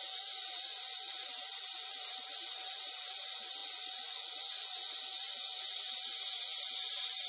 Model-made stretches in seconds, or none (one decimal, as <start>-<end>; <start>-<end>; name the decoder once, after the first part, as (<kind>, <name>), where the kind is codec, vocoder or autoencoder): 3.6-4.9 (vocoder, Vocos)